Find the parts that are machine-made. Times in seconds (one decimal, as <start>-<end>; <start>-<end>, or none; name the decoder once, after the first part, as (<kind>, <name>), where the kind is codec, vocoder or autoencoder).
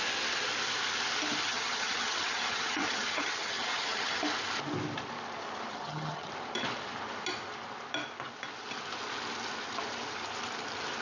1.4-4.2 (vocoder, HiFi-GAN); 5.7-6.3